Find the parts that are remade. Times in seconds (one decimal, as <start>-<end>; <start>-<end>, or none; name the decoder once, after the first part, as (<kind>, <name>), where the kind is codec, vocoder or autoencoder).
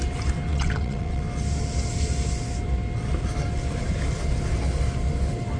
0.5-1.2 (vocoder, WaveNeXt)